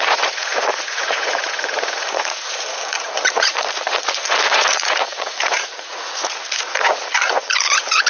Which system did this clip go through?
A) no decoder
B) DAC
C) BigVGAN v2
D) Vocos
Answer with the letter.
D